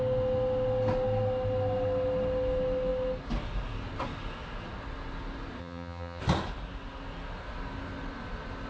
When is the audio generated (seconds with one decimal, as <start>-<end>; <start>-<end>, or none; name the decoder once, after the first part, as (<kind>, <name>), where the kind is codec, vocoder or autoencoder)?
5.6-6.2 (vocoder, HiFi-GAN)